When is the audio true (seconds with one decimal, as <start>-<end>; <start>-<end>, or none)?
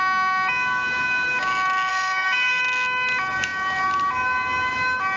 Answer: 0.0-1.9; 2.6-5.2